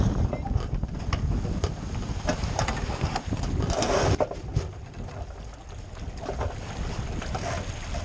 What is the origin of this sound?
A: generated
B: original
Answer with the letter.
B